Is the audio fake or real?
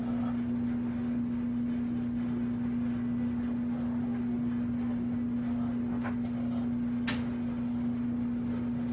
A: real